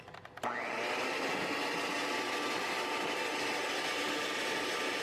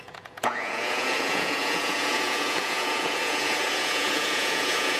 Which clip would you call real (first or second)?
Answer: first